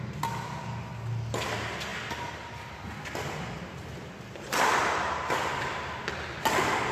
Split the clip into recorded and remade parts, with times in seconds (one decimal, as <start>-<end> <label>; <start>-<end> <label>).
0.0-6.9 recorded